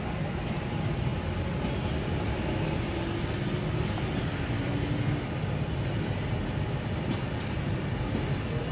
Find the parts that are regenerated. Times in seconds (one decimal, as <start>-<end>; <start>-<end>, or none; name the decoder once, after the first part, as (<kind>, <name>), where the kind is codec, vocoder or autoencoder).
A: none

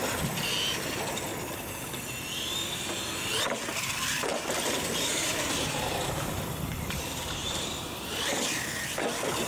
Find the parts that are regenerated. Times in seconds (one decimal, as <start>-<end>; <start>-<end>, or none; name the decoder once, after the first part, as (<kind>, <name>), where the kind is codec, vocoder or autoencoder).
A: 4.3-8.0 (vocoder, BigVGAN v2)

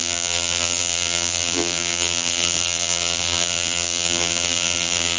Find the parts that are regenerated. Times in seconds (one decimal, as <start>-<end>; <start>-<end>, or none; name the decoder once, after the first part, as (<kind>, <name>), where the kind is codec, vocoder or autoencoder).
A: 0.0-5.2 (vocoder, BigVGAN v2)

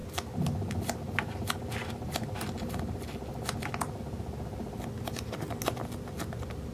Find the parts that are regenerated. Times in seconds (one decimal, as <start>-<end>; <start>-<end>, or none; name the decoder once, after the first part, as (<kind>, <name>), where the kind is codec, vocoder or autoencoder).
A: none

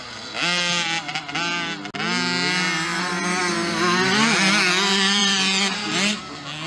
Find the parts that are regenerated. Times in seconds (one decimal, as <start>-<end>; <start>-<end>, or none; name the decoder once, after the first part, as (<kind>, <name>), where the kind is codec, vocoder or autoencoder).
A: 5.2-6.2 (vocoder, BigVGAN v2)